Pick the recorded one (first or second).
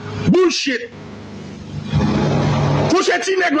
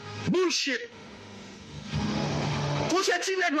first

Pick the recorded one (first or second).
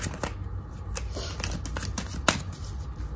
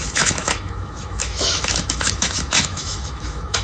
first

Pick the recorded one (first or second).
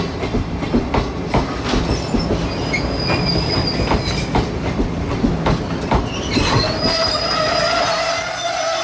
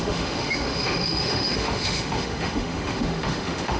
first